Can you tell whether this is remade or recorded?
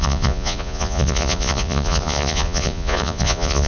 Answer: remade